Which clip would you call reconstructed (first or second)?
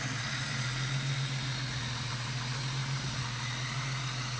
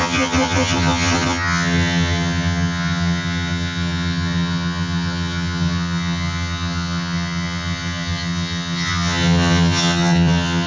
second